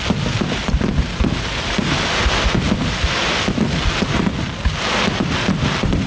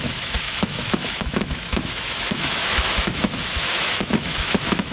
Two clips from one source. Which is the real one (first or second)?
first